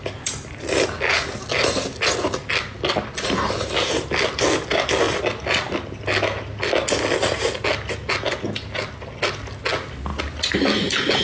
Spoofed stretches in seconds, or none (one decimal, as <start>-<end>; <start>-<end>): none